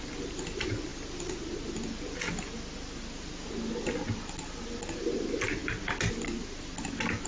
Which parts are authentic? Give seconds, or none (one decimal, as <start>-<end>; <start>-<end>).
0.0-7.3